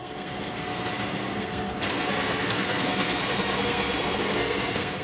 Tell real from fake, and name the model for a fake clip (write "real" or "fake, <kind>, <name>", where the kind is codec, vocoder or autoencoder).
fake, codec, SNAC